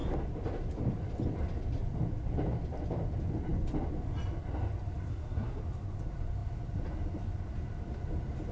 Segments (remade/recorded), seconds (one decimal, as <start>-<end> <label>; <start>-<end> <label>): 0.0-5.1 recorded; 5.1-5.6 remade; 5.6-8.5 recorded